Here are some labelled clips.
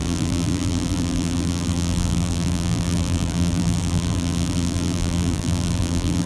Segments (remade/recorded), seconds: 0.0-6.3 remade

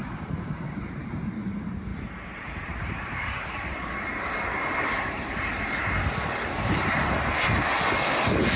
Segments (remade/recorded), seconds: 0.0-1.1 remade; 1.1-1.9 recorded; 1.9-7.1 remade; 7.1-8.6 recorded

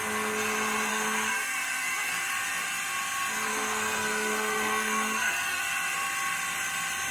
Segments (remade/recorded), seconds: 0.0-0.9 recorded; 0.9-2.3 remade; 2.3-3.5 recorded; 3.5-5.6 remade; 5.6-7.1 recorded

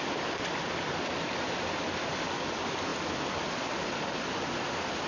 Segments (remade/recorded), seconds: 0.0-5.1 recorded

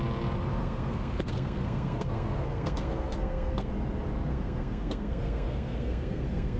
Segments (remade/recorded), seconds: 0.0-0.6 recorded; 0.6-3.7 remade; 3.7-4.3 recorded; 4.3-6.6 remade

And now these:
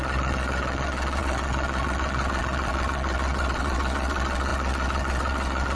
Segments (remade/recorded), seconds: 0.0-5.8 remade

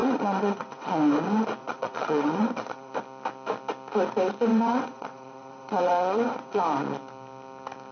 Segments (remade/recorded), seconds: 0.0-1.0 remade; 1.0-1.6 recorded; 1.6-2.9 remade; 2.9-4.5 recorded; 4.5-6.6 remade; 6.6-7.9 recorded

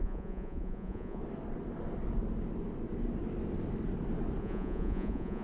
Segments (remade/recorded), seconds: 0.0-1.2 remade; 1.2-4.4 recorded; 4.4-5.4 remade